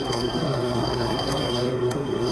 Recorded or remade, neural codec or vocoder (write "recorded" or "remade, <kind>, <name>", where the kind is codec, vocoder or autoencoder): remade, codec, SNAC